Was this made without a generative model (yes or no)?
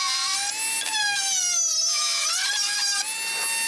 yes